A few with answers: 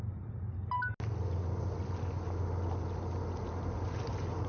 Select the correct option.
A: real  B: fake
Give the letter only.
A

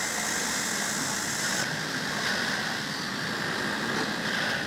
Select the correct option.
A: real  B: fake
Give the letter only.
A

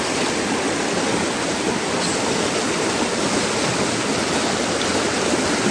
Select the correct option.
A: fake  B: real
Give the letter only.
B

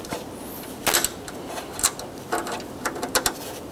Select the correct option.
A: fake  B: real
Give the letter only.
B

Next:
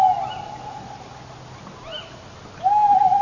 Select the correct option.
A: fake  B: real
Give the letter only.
B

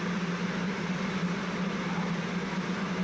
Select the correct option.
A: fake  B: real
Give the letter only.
B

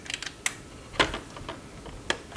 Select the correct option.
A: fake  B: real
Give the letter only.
B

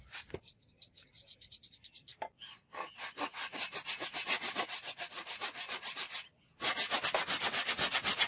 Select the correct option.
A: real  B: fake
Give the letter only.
A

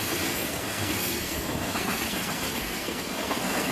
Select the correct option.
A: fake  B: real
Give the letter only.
A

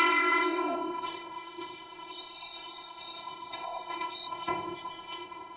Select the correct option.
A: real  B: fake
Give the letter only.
B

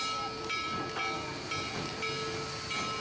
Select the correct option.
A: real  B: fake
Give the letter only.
A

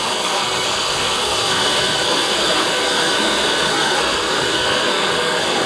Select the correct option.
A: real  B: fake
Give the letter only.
B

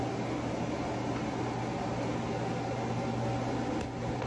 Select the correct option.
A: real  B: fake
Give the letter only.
A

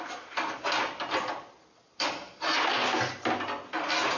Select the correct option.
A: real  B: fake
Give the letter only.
A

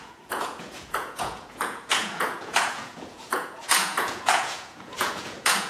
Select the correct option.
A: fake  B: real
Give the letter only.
A